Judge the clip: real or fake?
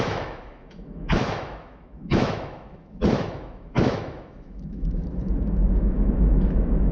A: fake